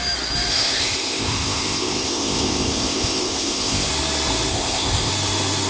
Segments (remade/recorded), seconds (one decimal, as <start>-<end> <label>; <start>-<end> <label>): 0.0-0.5 recorded; 0.5-3.9 remade; 3.9-4.5 recorded; 4.5-5.1 remade; 5.1-5.7 recorded